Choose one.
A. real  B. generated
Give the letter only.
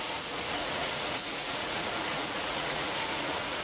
B